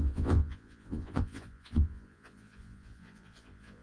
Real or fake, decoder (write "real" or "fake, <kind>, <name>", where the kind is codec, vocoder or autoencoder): fake, vocoder, Vocos